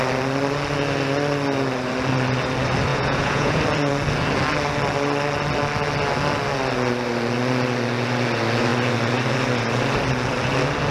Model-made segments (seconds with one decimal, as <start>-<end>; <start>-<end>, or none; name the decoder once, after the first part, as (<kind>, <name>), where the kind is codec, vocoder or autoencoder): 2.9-3.6 (vocoder, Vocos)